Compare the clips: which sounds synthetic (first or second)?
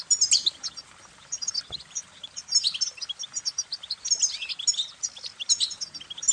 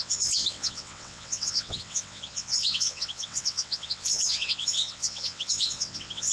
second